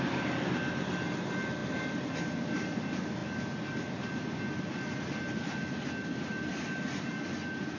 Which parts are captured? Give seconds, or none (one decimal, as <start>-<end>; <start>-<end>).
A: 0.0-7.8